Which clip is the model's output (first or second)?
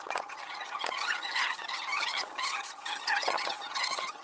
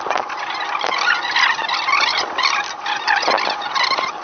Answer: first